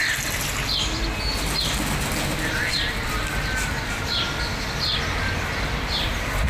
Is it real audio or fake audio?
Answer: real